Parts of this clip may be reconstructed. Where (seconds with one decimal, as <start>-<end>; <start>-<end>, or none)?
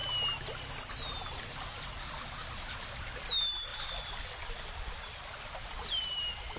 1.4-6.6